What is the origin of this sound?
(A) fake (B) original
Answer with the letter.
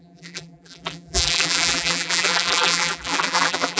A